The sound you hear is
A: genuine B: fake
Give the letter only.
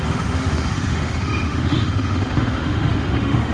B